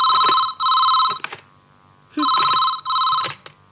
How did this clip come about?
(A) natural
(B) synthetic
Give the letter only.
A